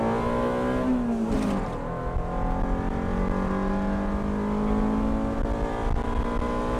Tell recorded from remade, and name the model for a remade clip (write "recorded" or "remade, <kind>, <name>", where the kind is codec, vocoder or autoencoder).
recorded